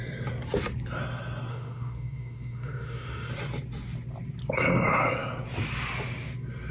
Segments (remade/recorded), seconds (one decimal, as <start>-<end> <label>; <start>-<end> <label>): 0.0-1.5 recorded; 1.5-3.3 remade; 3.3-6.7 recorded